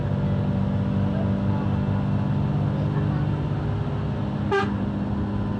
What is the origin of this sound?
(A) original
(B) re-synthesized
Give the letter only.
A